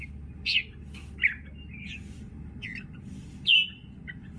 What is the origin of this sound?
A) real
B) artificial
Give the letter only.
A